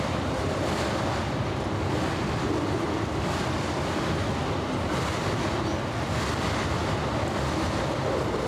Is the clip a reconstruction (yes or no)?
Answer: no